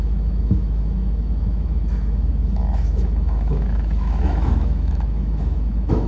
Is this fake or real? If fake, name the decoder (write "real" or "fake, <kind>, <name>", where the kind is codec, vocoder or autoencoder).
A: fake, autoencoder, DAC-VAE